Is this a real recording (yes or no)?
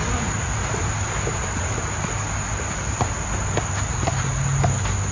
yes